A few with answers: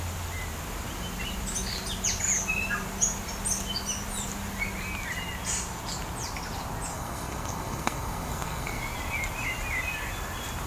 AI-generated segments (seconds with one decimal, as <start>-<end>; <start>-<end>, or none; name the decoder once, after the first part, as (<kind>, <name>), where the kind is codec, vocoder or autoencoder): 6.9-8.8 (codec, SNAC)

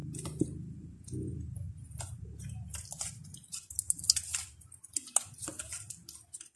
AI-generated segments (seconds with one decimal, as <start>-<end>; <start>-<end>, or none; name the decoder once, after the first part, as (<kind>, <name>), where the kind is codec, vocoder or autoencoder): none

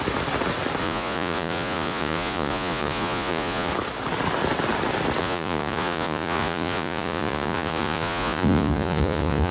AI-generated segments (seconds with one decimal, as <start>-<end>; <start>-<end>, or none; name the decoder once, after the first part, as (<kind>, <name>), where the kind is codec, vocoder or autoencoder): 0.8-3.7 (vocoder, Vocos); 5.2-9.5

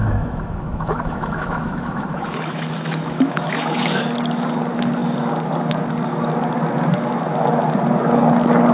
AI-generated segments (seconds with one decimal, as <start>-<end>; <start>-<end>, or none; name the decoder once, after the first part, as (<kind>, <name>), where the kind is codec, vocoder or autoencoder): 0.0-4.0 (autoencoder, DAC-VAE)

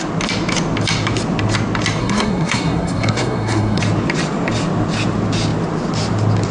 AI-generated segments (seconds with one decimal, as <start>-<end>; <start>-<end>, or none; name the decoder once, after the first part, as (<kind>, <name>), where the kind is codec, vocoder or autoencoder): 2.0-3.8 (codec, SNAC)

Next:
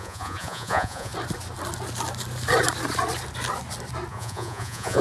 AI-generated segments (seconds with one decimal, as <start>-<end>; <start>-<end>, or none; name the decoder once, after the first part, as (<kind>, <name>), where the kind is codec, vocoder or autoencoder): 0.0-1.1 (vocoder, Vocos); 4.1-5.0